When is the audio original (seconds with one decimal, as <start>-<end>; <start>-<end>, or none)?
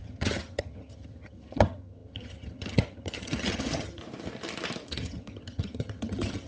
4.0-4.9